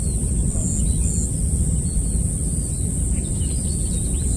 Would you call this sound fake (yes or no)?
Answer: no